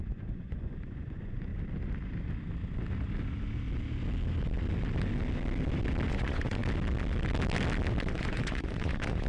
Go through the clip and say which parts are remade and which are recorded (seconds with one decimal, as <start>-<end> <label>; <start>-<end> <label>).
0.0-1.5 remade; 1.5-6.1 recorded; 6.1-6.6 remade; 6.6-8.1 recorded; 8.1-9.3 remade